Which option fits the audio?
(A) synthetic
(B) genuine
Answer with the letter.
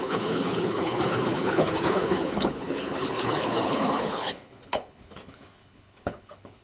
A